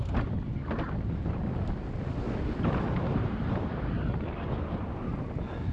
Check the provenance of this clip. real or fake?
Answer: real